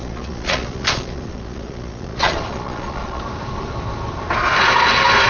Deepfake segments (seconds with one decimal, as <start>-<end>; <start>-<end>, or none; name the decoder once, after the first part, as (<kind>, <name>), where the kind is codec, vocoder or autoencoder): 0.0-3.2 (vocoder, Vocos)